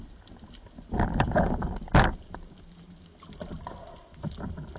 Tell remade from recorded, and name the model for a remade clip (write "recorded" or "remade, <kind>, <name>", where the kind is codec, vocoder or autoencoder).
recorded